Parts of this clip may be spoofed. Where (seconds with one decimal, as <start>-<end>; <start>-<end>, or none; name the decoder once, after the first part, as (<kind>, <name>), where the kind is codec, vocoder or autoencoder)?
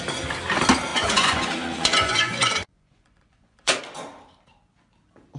0.9-3.8 (vocoder, Vocos)